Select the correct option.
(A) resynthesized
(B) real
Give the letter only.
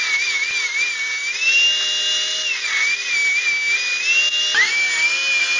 B